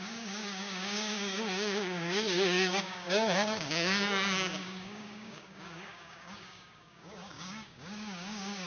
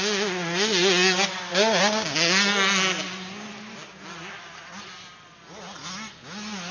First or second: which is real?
second